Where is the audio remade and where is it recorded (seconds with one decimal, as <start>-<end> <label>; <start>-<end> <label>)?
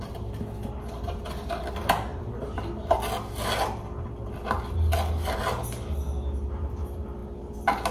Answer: 0.0-7.9 recorded